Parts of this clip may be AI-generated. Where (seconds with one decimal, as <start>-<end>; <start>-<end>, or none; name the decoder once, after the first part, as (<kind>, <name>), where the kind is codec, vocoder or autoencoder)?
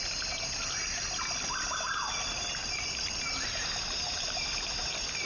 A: 2.6-3.2 (vocoder, BigVGAN v2)